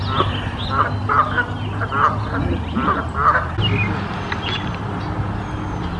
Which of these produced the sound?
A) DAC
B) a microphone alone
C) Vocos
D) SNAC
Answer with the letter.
B